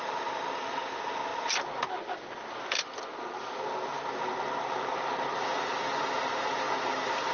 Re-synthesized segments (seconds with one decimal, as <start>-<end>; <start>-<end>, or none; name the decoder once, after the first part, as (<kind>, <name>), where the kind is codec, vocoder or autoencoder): none